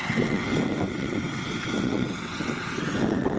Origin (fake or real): fake